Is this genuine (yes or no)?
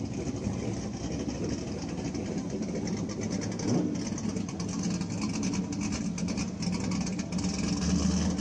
yes